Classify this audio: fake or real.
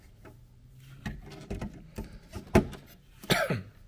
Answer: real